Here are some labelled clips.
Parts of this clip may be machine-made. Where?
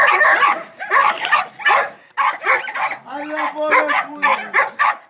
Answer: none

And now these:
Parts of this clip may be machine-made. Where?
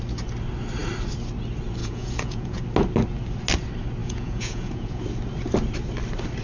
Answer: 1.8-2.6 (vocoder, Vocos); 4.0-5.0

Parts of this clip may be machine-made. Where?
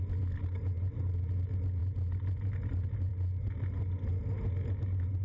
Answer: none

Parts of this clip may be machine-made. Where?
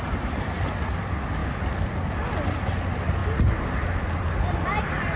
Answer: none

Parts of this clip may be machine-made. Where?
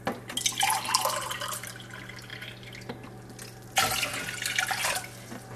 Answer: none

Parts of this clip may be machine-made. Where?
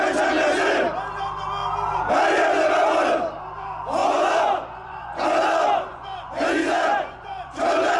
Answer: 4.0-5.2 (vocoder, Vocos); 5.9-7.6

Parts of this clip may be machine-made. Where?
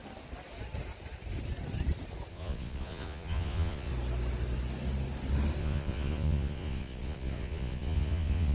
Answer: 2.3-3.9 (vocoder, Vocos); 5.6-8.5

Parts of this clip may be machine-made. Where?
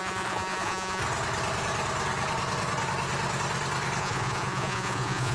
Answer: 0.0-1.0 (vocoder, Vocos); 4.0-5.3